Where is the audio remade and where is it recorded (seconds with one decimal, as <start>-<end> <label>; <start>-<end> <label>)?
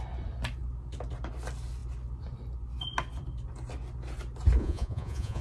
0.0-4.6 recorded; 4.6-5.4 remade